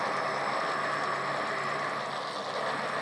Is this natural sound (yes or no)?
yes